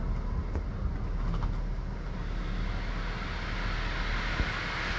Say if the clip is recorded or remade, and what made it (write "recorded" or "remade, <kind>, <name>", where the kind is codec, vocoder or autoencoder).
recorded